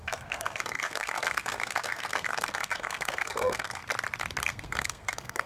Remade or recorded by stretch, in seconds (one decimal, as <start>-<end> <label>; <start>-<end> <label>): 0.0-3.8 remade; 3.8-4.4 recorded; 4.4-5.5 remade